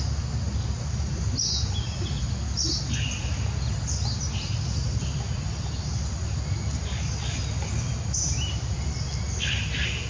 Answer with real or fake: real